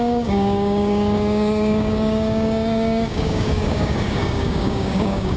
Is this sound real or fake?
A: fake